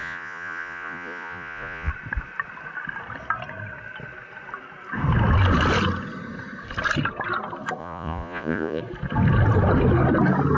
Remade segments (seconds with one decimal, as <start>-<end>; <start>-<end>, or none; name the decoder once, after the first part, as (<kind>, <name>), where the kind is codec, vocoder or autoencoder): 0.0-1.9 (vocoder, Vocos); 7.8-8.8